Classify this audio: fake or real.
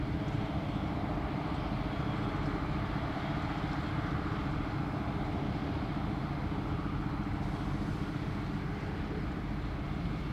real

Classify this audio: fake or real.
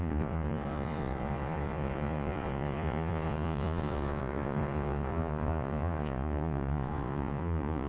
fake